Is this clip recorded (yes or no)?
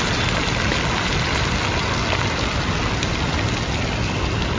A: yes